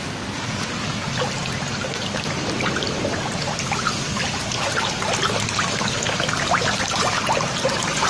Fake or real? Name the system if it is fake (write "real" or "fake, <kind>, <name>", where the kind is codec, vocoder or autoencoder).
real